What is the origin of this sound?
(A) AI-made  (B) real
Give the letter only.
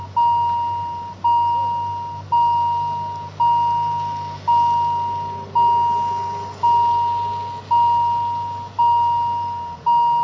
B